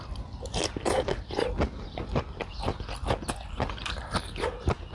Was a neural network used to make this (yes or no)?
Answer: no